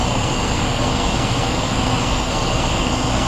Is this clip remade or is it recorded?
remade